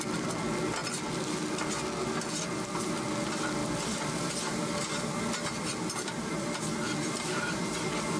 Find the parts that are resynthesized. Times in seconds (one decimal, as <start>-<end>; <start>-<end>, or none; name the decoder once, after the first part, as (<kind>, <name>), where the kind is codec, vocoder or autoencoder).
3.6-7.7 (vocoder, BigVGAN v2)